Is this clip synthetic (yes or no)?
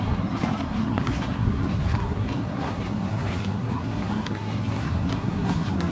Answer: yes